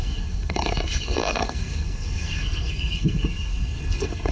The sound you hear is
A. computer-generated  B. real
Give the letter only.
A